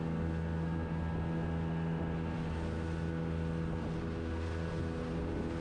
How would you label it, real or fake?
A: real